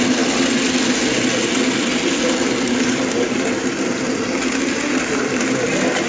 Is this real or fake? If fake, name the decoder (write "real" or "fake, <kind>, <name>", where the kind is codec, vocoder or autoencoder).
real